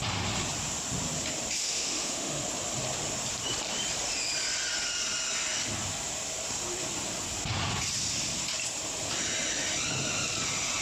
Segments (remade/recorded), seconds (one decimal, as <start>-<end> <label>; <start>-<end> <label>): 0.0-1.6 recorded; 1.6-2.4 remade; 2.4-10.8 recorded